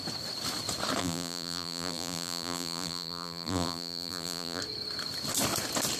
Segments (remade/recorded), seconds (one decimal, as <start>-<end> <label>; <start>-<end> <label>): 0.0-1.0 recorded; 1.0-4.6 remade; 4.6-6.0 recorded